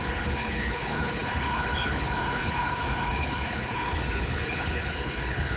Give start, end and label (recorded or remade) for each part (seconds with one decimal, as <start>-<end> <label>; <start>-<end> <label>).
0.0-5.6 remade